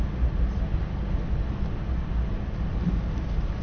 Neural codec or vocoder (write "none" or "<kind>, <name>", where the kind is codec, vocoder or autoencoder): none